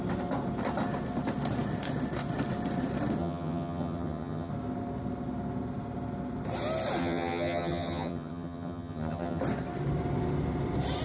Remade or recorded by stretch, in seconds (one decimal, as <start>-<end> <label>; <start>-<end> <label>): 0.0-3.2 recorded; 3.2-4.5 remade; 4.5-7.0 recorded; 7.0-9.4 remade; 9.4-11.0 recorded